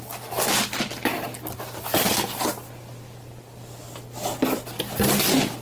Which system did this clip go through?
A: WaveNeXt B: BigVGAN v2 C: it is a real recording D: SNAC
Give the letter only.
C